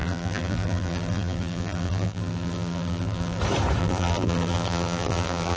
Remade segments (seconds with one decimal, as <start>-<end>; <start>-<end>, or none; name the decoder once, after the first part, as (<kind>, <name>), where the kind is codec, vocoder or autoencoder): 0.0-3.4 (vocoder, BigVGAN v2); 3.8-5.6